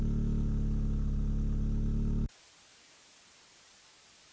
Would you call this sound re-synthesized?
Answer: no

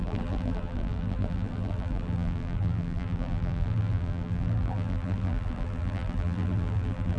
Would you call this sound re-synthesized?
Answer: yes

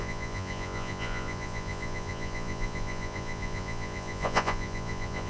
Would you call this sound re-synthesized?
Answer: yes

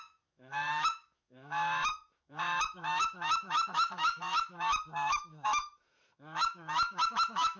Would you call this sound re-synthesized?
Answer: yes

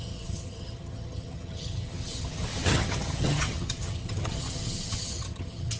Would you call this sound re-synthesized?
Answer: yes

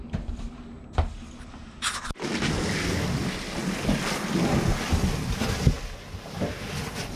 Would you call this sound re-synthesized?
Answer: no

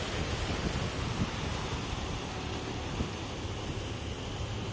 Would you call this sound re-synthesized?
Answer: no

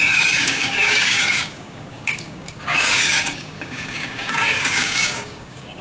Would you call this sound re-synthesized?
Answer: yes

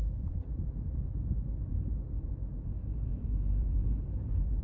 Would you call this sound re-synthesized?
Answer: yes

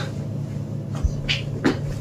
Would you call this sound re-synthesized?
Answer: no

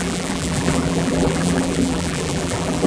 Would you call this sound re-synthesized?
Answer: yes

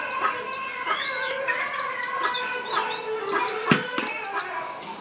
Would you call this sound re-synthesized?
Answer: no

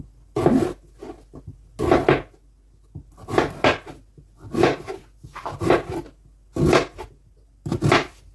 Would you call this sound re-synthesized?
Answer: no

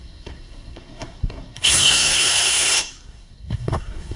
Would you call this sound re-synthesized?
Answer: yes